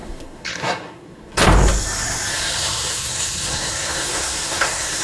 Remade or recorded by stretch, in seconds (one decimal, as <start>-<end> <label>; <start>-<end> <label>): 0.0-1.4 remade; 1.4-2.3 recorded; 2.3-5.0 remade